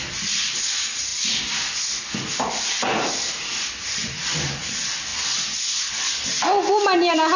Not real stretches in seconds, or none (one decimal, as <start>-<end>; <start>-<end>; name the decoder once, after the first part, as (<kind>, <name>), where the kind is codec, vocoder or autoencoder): none